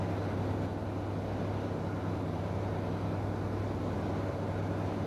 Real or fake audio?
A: real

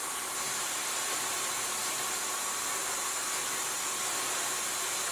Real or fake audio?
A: fake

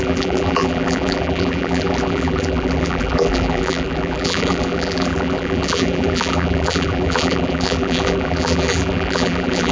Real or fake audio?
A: fake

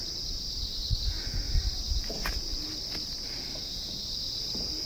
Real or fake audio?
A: real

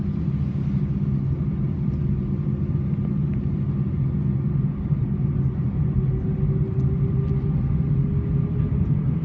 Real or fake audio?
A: real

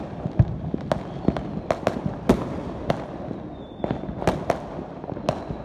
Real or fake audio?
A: real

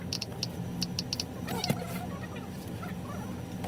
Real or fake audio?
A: real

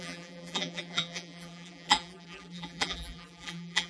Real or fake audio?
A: fake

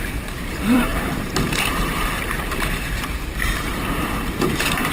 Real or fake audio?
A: fake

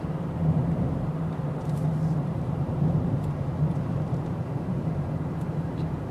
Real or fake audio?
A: fake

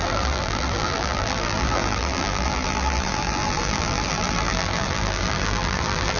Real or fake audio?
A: fake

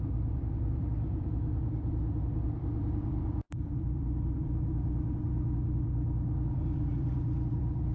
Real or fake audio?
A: fake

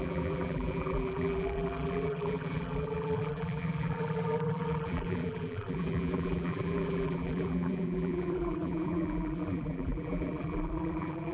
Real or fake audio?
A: fake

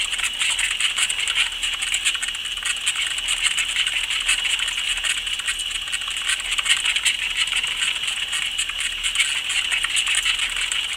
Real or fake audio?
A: real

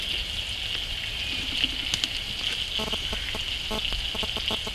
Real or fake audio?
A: real